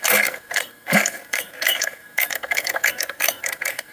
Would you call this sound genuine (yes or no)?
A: no